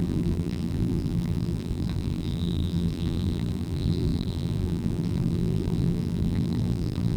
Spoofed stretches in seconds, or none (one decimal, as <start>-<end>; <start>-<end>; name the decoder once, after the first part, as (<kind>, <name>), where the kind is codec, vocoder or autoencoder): 0.0-7.2 (vocoder, BigVGAN v2)